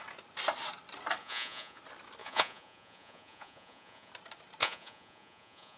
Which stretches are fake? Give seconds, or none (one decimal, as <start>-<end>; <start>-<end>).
1.2-1.8; 2.2-4.1; 4.6-5.8